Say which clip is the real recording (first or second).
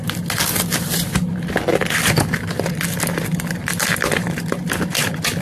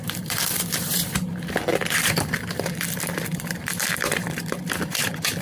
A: first